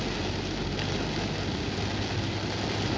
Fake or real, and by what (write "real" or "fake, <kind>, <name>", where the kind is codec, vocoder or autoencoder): real